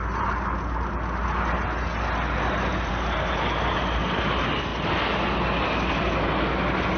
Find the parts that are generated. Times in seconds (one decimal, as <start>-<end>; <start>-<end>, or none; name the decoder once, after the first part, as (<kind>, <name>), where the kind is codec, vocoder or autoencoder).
none